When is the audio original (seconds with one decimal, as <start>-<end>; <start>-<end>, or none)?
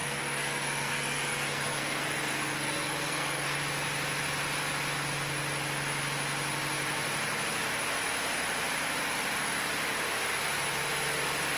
3.6-11.6